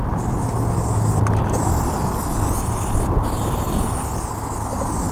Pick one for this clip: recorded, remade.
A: recorded